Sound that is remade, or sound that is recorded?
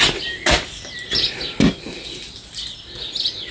recorded